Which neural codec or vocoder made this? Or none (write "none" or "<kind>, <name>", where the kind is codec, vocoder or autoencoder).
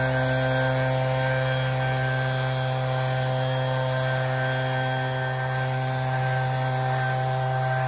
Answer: none